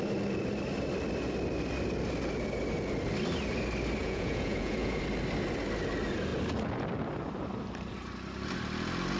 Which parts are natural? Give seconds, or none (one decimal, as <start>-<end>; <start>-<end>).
0.0-4.0; 5.0-9.2